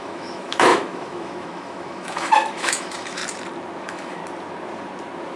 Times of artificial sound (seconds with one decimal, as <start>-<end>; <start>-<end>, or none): 0.0-3.2; 3.8-4.2